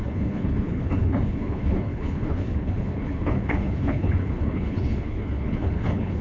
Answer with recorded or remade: remade